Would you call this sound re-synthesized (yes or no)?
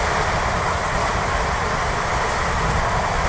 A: no